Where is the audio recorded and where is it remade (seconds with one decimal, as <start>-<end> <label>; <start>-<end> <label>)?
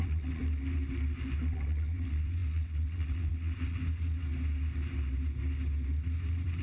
0.0-0.4 remade; 0.4-1.4 recorded; 1.4-3.8 remade; 3.8-6.6 recorded